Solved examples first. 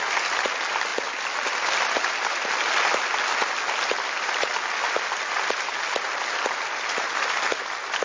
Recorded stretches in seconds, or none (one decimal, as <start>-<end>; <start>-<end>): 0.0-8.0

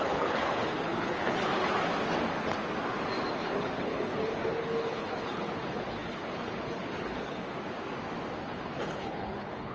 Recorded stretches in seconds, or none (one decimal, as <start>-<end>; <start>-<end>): 1.9-3.3; 7.4-8.4

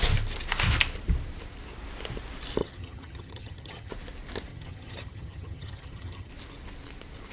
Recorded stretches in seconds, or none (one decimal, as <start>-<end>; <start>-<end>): 0.0-2.6; 3.9-4.5; 6.3-7.3

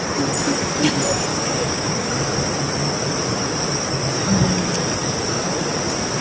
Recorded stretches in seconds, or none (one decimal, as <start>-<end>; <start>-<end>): 0.0-1.3; 2.1-6.2

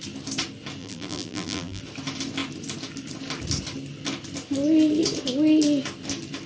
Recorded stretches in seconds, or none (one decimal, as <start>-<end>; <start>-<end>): 0.0-0.8; 1.8-6.5

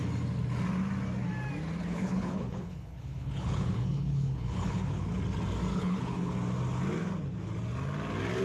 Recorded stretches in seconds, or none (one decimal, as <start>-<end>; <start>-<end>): 0.0-1.8; 5.1-5.7; 6.3-8.4